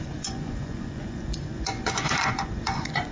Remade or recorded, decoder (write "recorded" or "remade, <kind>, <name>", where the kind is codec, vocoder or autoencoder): remade, vocoder, Vocos